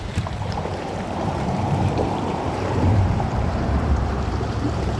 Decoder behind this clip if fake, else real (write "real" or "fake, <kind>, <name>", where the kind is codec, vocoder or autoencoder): fake, vocoder, BigVGAN v2